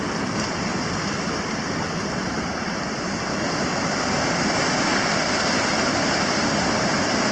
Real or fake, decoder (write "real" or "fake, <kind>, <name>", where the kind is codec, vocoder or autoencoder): real